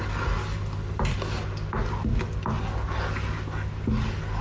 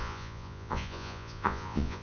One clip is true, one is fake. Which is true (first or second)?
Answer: first